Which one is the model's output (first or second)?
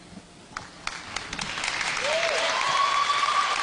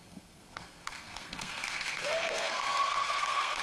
second